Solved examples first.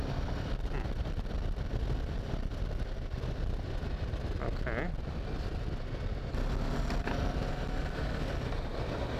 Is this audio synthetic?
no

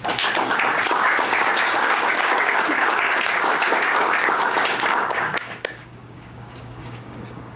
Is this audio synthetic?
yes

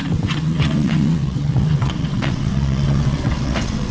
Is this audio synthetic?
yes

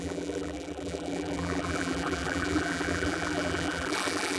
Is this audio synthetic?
yes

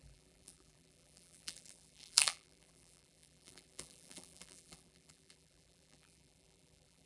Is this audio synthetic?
yes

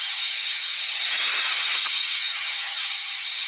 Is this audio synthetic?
yes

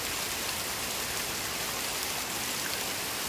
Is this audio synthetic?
no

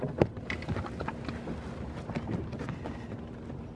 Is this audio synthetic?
no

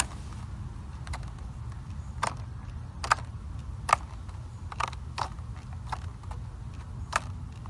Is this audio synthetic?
no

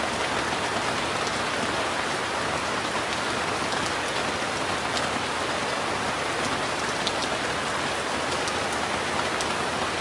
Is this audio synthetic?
no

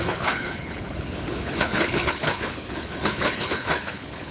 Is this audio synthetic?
yes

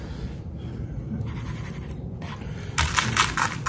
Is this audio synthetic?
yes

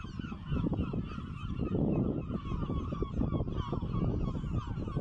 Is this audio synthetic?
no